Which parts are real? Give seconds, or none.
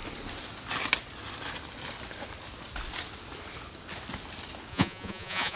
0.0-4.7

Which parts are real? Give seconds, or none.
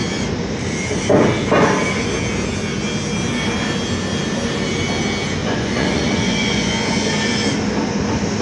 0.0-5.4; 7.1-8.4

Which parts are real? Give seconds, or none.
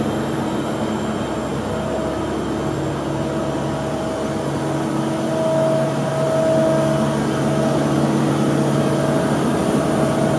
0.0-10.4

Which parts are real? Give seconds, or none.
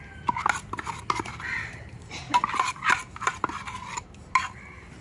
0.0-1.3; 3.0-5.0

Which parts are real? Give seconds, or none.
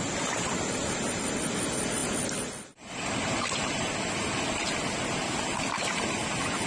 0.0-6.7